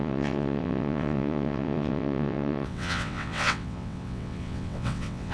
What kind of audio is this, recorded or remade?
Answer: remade